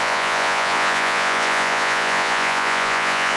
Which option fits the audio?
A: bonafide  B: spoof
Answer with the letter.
B